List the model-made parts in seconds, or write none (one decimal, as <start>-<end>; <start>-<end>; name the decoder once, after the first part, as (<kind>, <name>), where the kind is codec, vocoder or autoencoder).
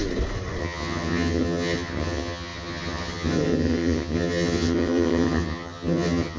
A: 0.6-6.4 (vocoder, HiFi-GAN)